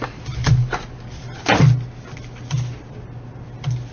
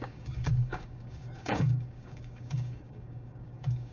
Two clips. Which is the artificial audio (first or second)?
second